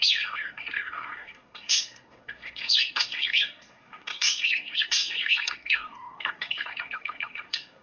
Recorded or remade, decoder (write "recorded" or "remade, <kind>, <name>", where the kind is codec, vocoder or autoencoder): remade, codec, SNAC